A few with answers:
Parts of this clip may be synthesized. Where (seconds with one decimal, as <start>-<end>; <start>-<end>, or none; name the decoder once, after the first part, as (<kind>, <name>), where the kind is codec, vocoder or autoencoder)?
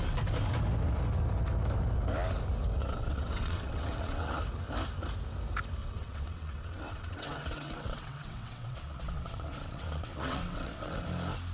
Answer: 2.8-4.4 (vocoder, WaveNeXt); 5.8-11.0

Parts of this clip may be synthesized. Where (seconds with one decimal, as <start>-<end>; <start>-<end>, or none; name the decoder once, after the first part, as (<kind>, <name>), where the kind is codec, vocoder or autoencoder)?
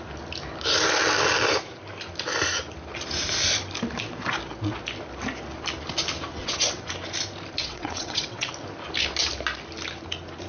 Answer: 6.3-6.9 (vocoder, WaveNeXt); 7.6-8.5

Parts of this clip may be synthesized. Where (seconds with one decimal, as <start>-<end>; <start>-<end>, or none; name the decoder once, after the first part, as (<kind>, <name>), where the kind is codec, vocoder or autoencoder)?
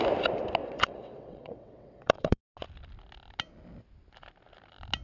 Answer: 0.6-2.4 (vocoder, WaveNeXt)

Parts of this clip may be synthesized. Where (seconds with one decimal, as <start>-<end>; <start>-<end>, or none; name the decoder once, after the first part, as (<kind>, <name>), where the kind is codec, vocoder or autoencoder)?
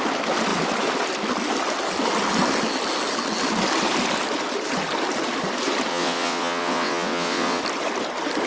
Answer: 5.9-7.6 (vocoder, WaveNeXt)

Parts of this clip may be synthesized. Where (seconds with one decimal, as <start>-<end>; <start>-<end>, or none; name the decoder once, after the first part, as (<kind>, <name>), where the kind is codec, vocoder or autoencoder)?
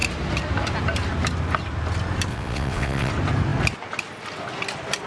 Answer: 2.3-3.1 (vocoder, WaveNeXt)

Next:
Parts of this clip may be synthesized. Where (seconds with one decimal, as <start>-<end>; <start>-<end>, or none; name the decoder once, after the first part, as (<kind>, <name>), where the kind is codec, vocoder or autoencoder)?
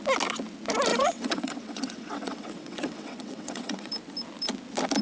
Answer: 0.9-3.9 (vocoder, WaveNeXt)